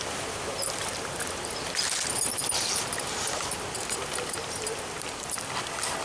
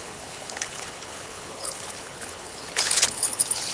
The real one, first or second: first